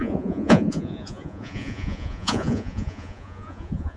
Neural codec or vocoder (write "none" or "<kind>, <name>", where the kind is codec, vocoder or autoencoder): vocoder, Vocos